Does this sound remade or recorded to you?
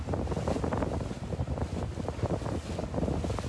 recorded